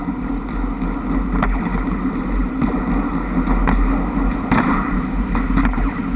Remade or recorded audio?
recorded